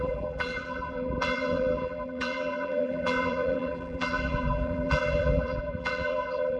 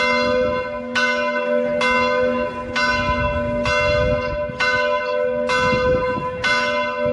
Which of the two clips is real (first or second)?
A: second